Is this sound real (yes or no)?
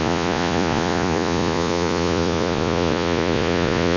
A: no